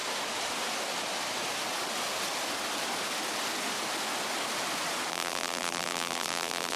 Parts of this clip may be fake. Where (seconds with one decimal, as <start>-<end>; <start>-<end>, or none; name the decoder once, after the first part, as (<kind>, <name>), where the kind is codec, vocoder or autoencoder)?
5.1-6.8 (vocoder, BigVGAN v2)